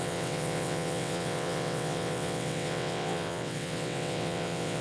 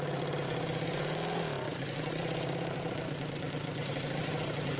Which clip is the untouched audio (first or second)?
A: second